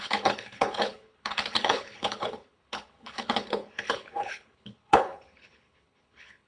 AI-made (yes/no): yes